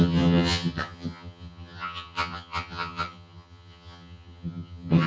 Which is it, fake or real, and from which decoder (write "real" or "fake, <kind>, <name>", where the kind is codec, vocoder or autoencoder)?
fake, vocoder, HiFi-GAN